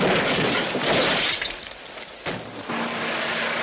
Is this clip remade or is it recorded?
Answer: recorded